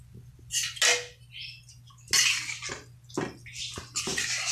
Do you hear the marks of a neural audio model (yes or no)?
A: no